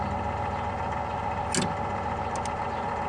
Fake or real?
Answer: real